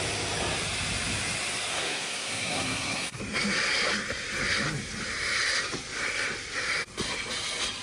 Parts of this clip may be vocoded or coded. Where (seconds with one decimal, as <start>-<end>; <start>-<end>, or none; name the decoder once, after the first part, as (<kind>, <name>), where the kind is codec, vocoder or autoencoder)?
1.7-3.2 (codec, SNAC)